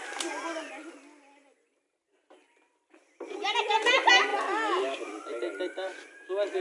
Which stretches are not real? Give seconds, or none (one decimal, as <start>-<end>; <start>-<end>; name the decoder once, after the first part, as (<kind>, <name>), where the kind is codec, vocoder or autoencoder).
none